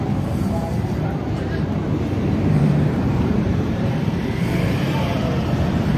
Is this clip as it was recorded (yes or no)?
no